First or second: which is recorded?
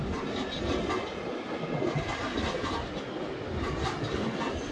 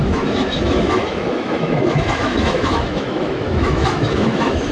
first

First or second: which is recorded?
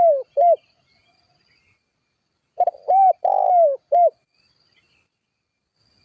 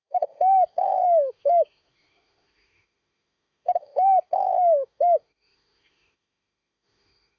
first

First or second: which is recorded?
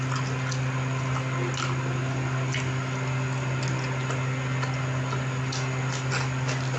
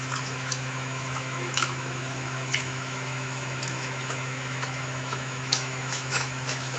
first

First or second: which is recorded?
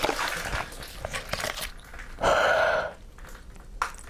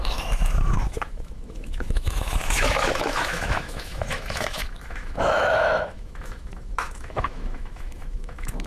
first